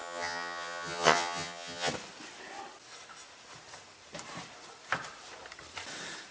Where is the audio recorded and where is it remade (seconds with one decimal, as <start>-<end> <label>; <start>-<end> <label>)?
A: 0.0-1.9 remade; 1.9-6.3 recorded